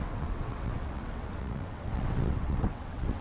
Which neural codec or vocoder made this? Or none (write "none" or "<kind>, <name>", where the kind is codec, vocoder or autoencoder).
vocoder, WaveNeXt